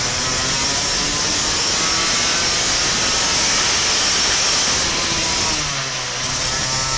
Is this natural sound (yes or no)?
yes